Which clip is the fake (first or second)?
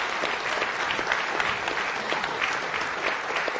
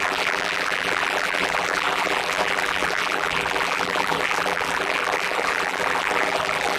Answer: second